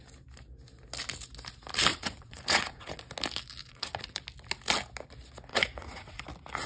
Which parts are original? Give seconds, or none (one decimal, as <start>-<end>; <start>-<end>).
0.0-1.9; 3.0-3.6; 4.2-5.5; 6.2-6.7